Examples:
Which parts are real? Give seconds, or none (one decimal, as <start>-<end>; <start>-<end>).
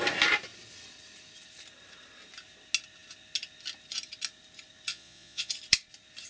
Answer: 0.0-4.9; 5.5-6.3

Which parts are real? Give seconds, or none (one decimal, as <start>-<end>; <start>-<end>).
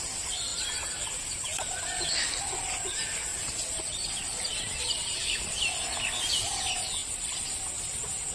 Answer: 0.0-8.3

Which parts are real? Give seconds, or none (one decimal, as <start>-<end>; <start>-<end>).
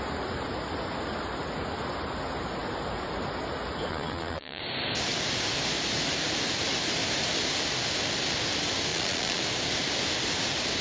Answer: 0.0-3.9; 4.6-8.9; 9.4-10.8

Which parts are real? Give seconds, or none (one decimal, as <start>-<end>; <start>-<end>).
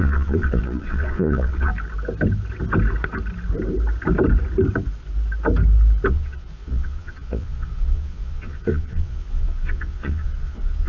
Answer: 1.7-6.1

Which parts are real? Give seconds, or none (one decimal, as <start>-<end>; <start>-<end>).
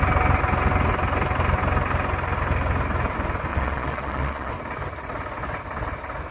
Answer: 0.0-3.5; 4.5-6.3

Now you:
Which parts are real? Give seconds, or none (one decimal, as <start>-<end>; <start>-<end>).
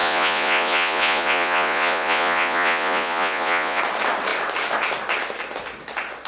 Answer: 3.8-6.3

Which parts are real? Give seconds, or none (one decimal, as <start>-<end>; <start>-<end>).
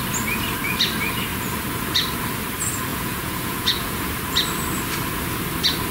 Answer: 0.0-2.9; 4.1-5.9